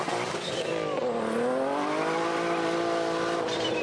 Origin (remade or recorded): recorded